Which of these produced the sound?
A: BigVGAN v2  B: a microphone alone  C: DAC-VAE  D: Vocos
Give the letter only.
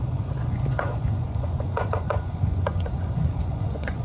D